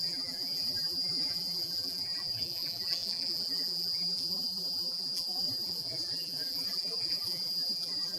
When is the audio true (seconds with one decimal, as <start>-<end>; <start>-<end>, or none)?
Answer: none